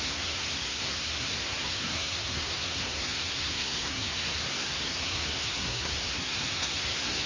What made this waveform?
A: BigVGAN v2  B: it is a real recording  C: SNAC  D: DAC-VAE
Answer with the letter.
C